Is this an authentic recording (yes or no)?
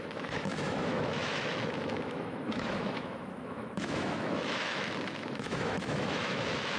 no